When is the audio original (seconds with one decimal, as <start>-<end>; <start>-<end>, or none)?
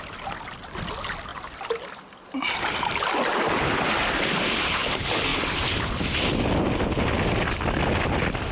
0.0-1.3; 2.0-5.3; 6.2-8.5